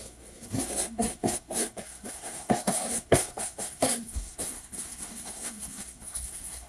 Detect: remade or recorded remade